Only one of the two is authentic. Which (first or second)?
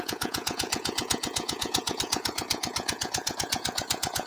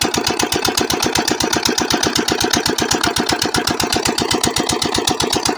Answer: second